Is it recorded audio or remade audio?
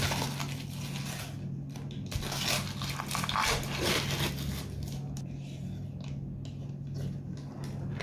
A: recorded